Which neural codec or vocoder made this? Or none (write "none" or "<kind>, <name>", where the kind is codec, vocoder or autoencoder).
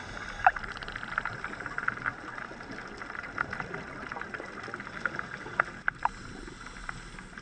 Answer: none